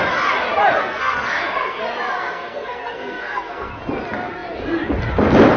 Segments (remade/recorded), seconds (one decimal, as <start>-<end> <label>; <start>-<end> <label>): 0.0-0.8 recorded; 0.8-1.8 remade; 1.8-2.2 recorded; 2.2-3.8 remade; 3.8-5.6 recorded

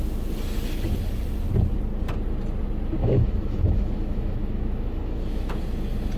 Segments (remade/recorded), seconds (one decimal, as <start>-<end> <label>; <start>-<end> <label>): 0.0-3.0 recorded; 3.0-5.6 remade; 5.6-6.2 recorded

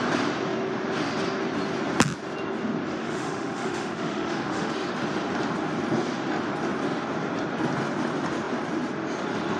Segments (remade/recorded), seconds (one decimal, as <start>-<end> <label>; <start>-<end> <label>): 0.0-2.9 recorded; 2.9-4.7 remade; 4.7-9.6 recorded